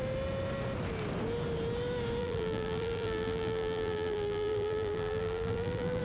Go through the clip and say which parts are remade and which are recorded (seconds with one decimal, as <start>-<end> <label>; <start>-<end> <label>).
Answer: 0.0-2.2 recorded; 2.2-6.0 remade